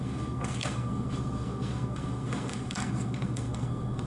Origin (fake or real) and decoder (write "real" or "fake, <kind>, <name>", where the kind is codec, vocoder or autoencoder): fake, codec, SNAC